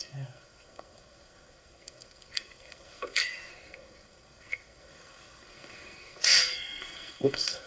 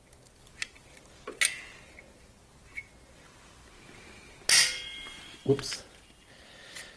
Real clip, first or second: second